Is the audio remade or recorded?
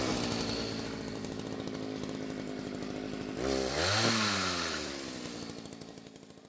recorded